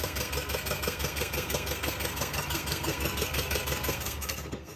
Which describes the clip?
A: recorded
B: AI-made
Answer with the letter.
B